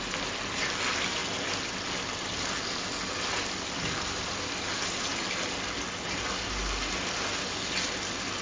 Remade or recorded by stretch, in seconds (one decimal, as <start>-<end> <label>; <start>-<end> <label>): 0.0-8.4 recorded